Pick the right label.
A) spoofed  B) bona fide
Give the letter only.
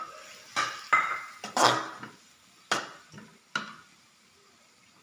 B